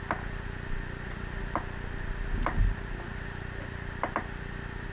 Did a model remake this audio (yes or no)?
no